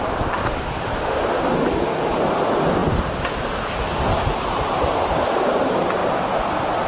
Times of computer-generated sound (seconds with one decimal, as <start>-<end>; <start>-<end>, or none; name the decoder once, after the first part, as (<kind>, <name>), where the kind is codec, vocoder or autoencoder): none